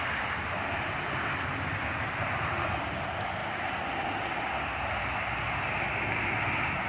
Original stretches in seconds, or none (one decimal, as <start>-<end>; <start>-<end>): 0.0-6.9